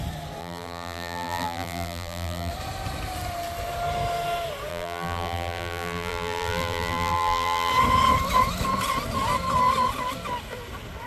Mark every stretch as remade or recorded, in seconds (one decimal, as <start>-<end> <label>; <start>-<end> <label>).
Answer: 0.0-0.4 recorded; 0.4-2.5 remade; 2.5-4.7 recorded; 4.7-7.7 remade; 7.7-11.1 recorded